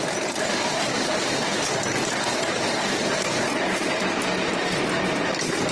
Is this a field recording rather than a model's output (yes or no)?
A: yes